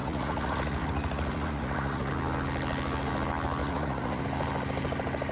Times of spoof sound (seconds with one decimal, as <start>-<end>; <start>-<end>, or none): 0.0-2.1; 3.6-4.2